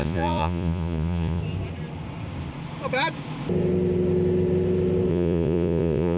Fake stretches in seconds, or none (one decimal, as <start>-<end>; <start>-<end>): 0.0-1.4; 5.1-6.2